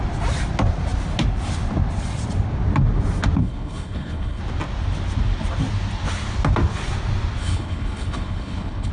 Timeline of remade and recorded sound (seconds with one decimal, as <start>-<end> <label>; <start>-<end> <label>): 0.0-3.4 recorded; 3.4-4.4 remade; 4.4-7.4 recorded; 7.4-8.9 remade